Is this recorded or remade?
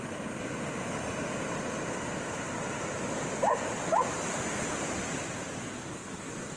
recorded